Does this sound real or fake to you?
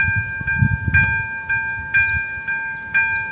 real